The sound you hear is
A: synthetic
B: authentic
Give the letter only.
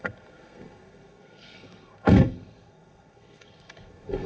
A